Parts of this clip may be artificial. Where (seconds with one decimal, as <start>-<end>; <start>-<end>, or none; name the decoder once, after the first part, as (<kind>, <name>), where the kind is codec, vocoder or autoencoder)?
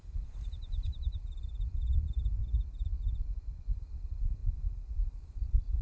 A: 0.0-2.4 (vocoder, BigVGAN v2); 3.7-5.8